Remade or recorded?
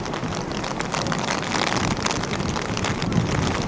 recorded